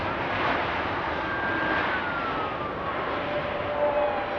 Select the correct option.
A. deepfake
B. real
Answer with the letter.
B